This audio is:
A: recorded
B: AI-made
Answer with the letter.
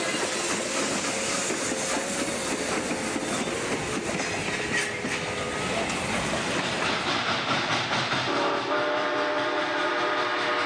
A